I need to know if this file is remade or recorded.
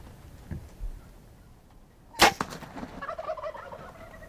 recorded